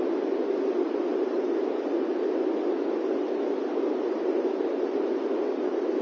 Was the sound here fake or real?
real